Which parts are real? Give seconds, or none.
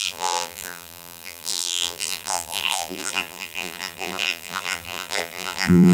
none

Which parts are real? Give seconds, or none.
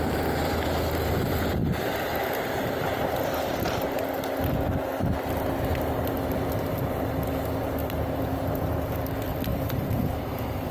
0.0-7.8; 8.4-9.5